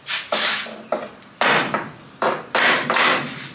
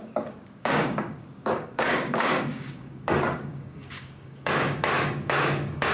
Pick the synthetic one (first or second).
second